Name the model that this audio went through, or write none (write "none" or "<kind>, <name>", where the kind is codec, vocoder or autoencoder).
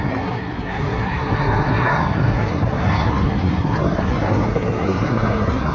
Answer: codec, SNAC